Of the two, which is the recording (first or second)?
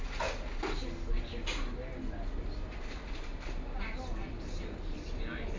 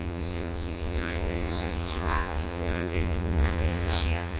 first